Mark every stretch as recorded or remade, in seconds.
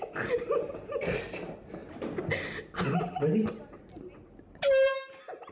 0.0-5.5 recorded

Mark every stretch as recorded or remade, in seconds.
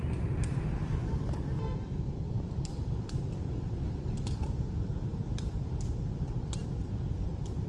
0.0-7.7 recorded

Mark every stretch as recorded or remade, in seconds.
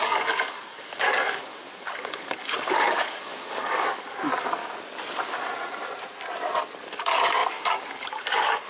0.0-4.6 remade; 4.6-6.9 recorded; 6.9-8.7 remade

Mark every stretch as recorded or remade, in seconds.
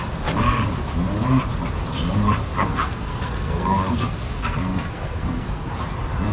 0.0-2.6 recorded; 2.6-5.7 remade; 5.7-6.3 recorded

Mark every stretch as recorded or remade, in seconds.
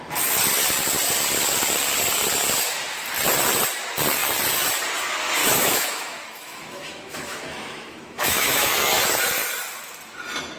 0.0-5.4 recorded; 5.4-8.7 remade; 8.7-10.6 recorded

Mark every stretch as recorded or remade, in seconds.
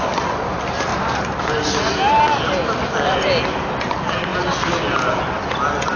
0.0-0.9 recorded; 0.9-1.6 remade; 1.6-6.0 recorded